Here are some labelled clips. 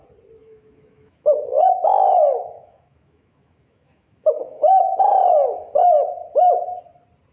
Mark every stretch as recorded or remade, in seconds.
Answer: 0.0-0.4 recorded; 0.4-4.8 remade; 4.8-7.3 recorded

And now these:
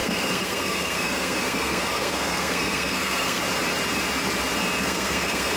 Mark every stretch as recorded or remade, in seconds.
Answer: 0.0-3.4 remade; 3.4-4.8 recorded; 4.8-5.6 remade

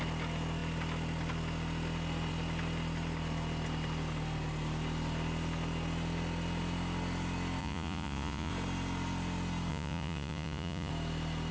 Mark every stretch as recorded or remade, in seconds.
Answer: 0.0-7.6 recorded; 7.6-8.5 remade; 8.5-9.7 recorded; 9.7-10.9 remade; 10.9-11.5 recorded

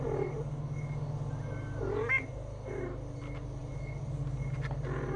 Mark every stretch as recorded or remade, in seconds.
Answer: 0.0-5.2 recorded